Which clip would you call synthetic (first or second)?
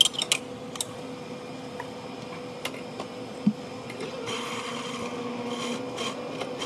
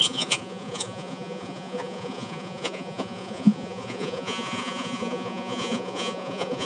second